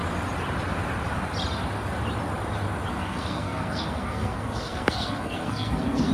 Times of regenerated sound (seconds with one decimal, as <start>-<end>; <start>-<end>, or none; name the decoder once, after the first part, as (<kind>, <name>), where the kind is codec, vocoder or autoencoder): 2.9-6.1 (codec, SNAC)